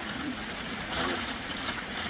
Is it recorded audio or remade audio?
remade